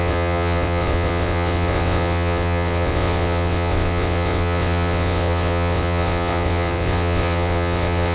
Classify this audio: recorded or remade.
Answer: remade